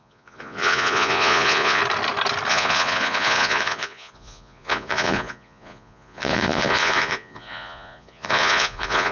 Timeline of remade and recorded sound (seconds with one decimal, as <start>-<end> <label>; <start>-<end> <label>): 0.0-1.8 remade; 1.8-2.5 recorded; 2.5-9.1 remade